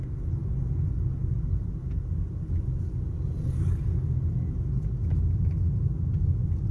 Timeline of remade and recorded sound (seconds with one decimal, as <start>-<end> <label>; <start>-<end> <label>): 0.0-6.7 recorded